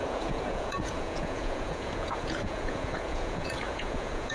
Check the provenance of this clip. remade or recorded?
remade